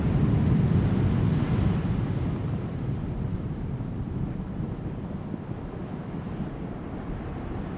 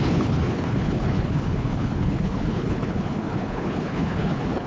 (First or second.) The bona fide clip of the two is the first